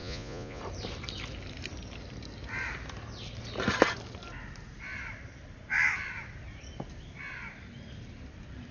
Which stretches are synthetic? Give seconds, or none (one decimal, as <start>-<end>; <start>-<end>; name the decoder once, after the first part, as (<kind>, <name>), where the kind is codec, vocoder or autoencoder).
0.0-0.6 (vocoder, Vocos)